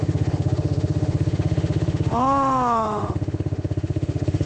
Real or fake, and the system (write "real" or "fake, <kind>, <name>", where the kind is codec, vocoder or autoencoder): fake, autoencoder, DAC-VAE